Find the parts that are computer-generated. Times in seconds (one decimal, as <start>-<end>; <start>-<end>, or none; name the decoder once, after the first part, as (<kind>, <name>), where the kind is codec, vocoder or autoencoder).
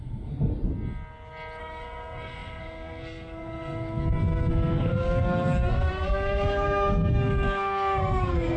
0.0-0.5 (codec, SNAC); 1.6-8.6